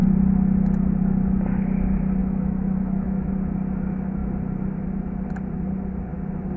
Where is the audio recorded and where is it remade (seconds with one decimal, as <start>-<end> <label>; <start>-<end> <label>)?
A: 0.0-2.2 recorded; 2.2-3.3 remade; 3.3-6.6 recorded